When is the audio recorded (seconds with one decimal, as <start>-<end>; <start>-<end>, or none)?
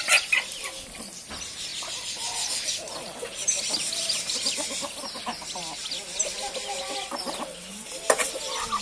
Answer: 0.0-8.8